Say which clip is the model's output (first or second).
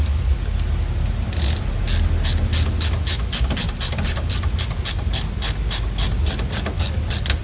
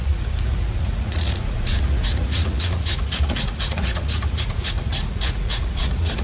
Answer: second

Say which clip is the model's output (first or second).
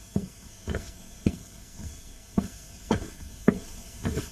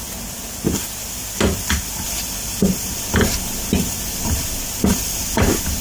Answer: first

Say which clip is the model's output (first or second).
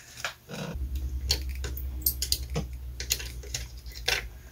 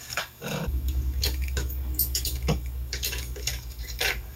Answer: second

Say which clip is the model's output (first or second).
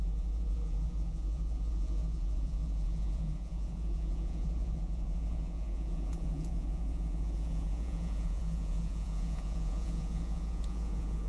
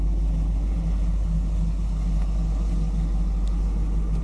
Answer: first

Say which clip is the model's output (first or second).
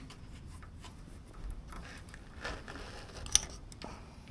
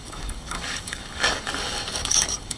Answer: second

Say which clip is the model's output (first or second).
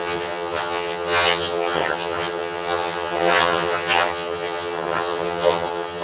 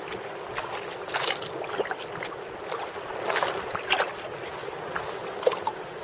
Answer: first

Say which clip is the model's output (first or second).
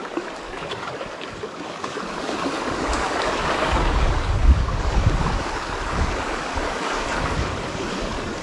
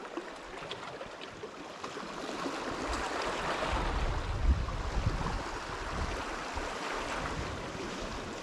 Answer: first